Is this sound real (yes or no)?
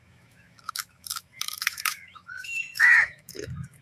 no